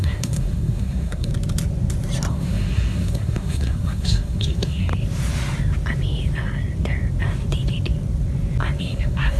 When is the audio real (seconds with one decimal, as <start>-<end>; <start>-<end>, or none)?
1.3-2.3; 4.9-8.8